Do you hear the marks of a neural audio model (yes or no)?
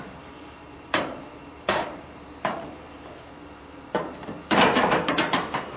yes